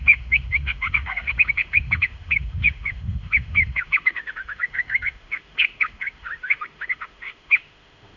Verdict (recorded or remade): remade